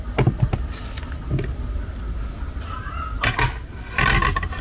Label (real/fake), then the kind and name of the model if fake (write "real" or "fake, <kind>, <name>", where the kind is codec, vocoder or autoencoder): real